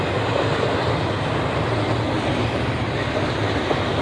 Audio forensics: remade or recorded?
recorded